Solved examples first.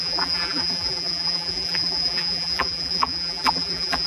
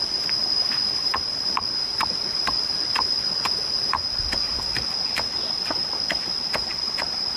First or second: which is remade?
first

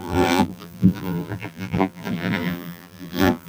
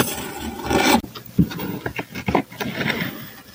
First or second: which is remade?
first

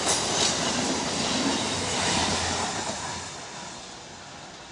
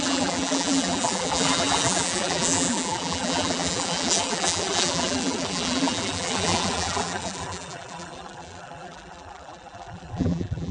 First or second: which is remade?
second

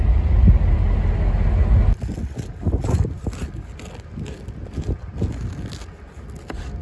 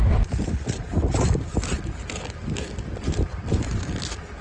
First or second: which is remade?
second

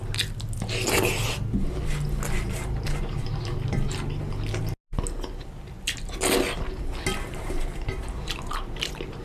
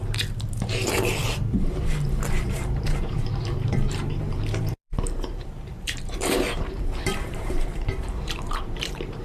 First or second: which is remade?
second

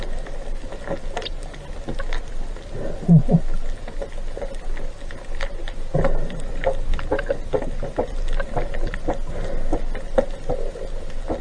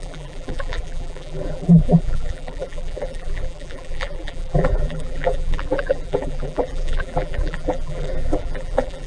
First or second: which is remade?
second